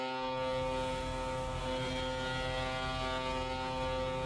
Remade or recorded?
recorded